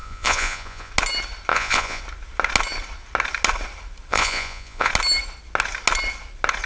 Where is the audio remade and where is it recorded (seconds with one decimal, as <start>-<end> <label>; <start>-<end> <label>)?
0.0-0.9 remade; 0.9-1.5 recorded; 1.5-2.0 remade; 2.0-4.1 recorded; 4.1-4.9 remade; 4.9-6.7 recorded